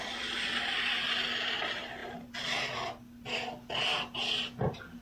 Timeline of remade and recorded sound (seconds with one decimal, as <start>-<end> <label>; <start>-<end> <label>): 0.0-5.0 recorded